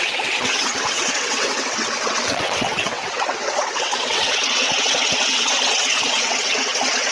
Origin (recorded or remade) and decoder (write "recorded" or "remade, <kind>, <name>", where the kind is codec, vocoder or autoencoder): remade, vocoder, WaveNeXt